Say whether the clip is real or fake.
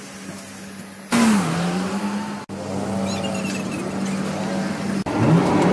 real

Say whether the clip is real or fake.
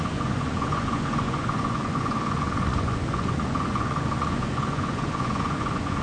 fake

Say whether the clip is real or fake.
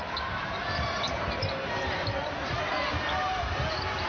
real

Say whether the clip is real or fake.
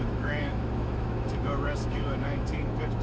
fake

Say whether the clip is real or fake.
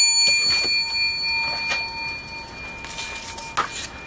real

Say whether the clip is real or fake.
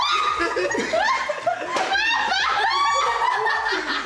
real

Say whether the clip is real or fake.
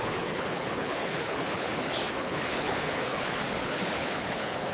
fake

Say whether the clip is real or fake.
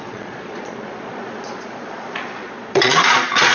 fake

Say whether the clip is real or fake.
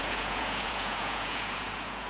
fake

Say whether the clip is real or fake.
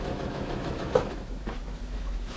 fake